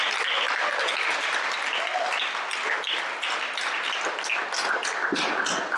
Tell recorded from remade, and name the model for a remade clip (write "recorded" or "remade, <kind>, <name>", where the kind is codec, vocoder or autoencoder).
recorded